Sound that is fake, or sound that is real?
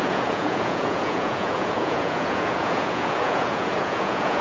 fake